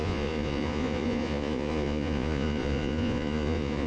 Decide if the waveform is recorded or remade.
remade